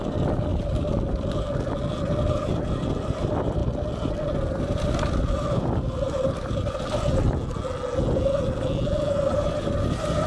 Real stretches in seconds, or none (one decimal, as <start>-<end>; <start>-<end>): 0.5-2.3; 3.6-4.6; 7.4-9.2